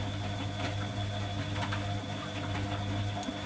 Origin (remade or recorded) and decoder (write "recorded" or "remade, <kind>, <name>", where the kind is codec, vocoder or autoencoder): recorded